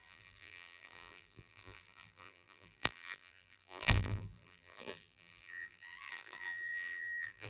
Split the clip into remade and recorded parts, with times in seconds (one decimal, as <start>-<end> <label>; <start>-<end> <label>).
0.0-7.5 remade